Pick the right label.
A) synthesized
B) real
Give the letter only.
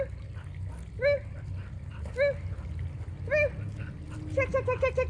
B